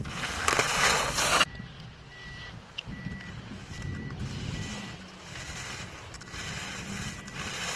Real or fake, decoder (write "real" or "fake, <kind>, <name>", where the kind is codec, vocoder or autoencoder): real